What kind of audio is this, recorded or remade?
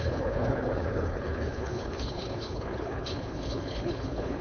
remade